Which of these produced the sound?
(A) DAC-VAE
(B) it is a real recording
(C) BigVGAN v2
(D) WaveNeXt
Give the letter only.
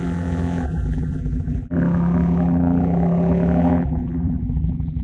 C